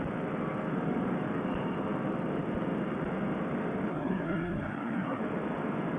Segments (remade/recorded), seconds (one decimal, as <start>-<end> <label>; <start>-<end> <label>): 0.0-3.9 recorded; 3.9-5.2 remade; 5.2-6.0 recorded